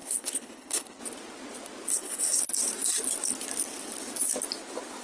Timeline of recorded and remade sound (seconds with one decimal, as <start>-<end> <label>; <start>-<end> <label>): 0.0-1.0 remade; 1.0-1.9 recorded; 1.9-2.4 remade; 2.4-5.0 recorded